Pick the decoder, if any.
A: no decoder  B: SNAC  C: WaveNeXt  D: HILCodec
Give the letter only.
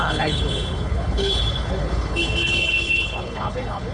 D